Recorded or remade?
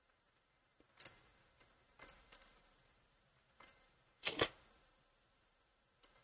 recorded